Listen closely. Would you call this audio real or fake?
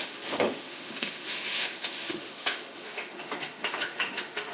fake